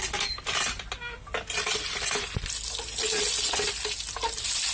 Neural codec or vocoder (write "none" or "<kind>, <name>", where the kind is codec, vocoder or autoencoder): none